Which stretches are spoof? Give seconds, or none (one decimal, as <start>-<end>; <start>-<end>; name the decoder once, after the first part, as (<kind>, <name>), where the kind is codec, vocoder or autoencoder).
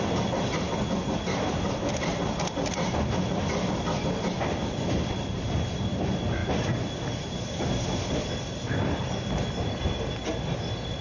none